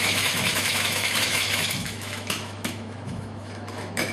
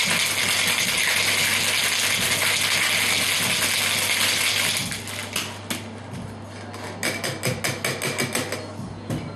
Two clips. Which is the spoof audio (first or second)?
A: first